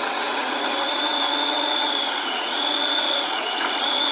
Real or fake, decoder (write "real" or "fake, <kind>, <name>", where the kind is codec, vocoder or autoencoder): fake, vocoder, Vocos